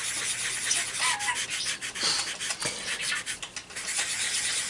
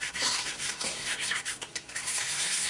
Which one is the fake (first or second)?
second